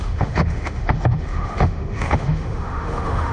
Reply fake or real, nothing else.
fake